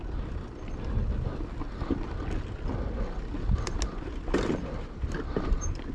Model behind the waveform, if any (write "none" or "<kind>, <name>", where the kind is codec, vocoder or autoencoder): none